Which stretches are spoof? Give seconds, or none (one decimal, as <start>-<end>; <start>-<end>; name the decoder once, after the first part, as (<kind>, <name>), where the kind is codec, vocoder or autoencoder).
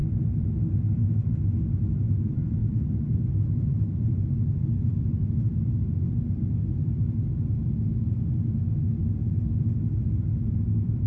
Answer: 1.7-6.5 (vocoder, BigVGAN v2); 10.5-11.1